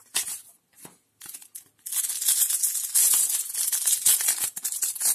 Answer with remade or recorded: recorded